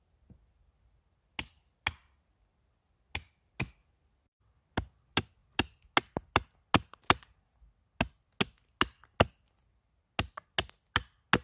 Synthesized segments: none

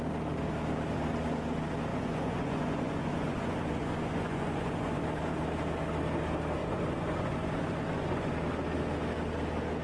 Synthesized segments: 1.9-5.0 (vocoder, Vocos); 6.6-8.3

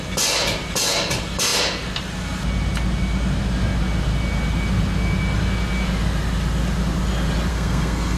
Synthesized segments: 7.5-8.2 (codec, SNAC)

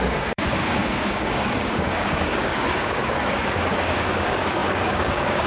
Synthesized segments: 0.0-5.5 (codec, DAC)

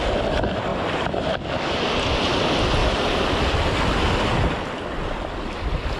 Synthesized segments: 0.7-1.2 (vocoder, BigVGAN v2); 2.8-3.4

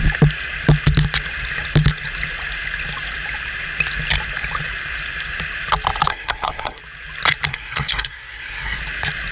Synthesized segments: 6.1-6.8 (codec, SNAC); 7.5-8.8

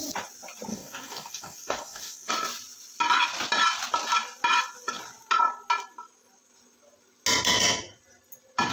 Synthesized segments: 0.7-2.3 (codec, DAC)